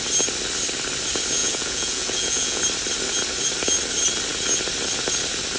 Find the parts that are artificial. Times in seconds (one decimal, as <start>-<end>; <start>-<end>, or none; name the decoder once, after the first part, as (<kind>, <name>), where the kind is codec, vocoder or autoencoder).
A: 1.4-2.6 (vocoder, Vocos)